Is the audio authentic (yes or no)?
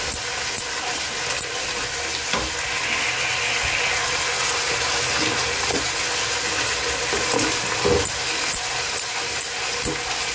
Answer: yes